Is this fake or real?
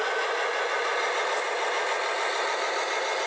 real